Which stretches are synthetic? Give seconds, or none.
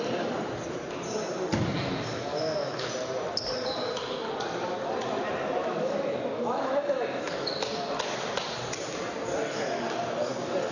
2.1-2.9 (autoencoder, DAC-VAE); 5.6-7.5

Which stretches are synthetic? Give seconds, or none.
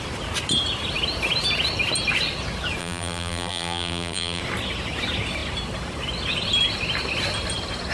2.8-4.4 (vocoder, BigVGAN v2)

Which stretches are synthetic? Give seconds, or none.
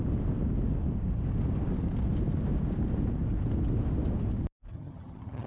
4.7-5.5 (vocoder, HiFi-GAN)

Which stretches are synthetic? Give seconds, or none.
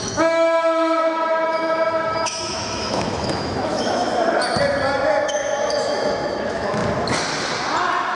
0.0-4.1 (autoencoder, DAC-VAE); 5.2-6.8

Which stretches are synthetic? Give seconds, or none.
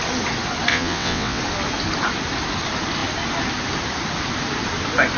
0.7-1.4 (vocoder, WaveNeXt)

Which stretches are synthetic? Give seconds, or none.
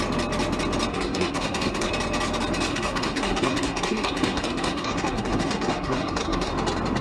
0.9-1.9 (codec, SNAC); 2.7-6.5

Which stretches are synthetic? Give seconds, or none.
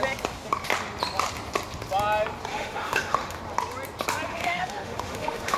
2.5-3.4 (autoencoder, DAC-VAE); 4.3-5.6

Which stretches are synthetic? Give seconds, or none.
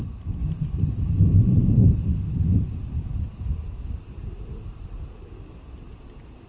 0.4-1.2 (vocoder, BigVGAN v2)